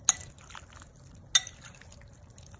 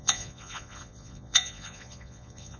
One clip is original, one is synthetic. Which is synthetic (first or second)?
second